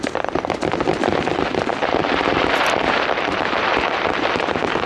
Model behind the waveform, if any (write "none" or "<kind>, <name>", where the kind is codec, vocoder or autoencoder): vocoder, BigVGAN v2